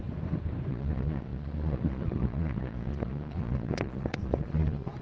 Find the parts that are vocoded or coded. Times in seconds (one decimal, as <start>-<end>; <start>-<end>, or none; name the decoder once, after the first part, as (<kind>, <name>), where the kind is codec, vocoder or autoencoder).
0.7-5.0 (vocoder, Vocos)